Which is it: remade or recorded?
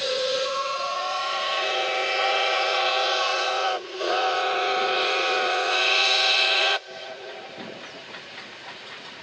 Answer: remade